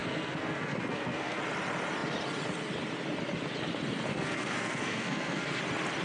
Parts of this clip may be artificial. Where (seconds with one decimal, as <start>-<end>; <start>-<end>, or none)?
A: 0.0-1.4; 4.1-5.6